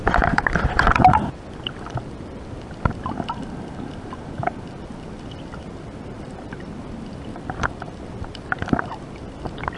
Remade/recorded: remade